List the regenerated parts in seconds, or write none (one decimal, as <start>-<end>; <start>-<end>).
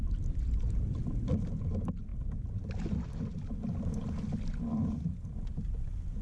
none